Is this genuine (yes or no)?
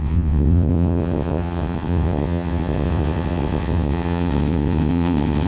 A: no